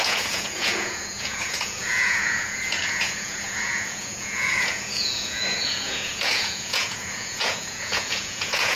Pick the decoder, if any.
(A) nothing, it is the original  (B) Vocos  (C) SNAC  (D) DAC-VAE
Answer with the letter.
B